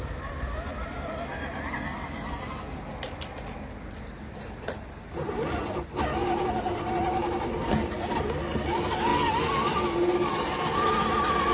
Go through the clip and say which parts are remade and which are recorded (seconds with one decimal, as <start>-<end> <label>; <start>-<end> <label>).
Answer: 0.0-6.2 recorded; 6.2-6.9 remade; 6.9-11.5 recorded